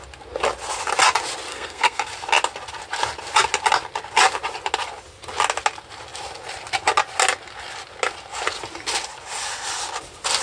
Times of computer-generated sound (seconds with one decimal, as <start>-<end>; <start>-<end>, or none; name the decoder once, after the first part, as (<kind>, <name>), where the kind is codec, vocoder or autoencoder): 1.5-2.1 (codec, SNAC)